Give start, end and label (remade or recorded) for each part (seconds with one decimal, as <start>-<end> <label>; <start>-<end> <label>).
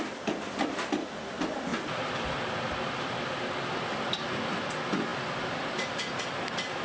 0.0-6.8 recorded